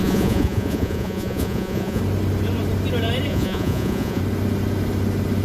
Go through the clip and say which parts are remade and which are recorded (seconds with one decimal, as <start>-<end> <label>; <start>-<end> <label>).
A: 0.0-2.0 remade; 2.0-3.3 recorded; 3.3-4.2 remade; 4.2-5.4 recorded